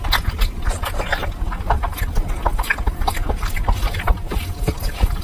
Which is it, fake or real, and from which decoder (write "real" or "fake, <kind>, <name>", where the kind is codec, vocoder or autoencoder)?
real